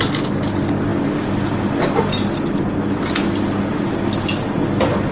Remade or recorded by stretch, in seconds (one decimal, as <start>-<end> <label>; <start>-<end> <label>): 0.0-5.1 recorded